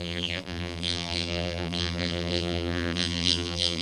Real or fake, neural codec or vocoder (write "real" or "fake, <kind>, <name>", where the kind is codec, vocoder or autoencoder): fake, vocoder, BigVGAN v2